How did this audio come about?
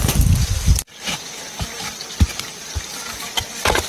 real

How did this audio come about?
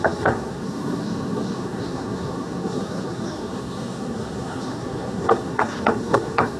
fake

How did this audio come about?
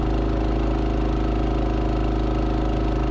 real